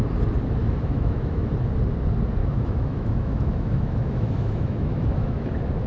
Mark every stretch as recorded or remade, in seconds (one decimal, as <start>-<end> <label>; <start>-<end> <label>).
0.0-0.6 recorded; 0.6-1.5 remade; 1.5-2.4 recorded; 2.4-5.5 remade; 5.5-5.9 recorded